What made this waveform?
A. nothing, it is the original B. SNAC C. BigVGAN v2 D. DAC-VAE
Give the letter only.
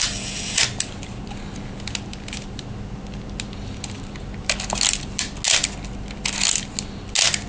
A